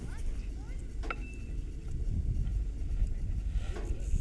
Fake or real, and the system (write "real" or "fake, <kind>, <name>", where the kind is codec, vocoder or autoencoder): real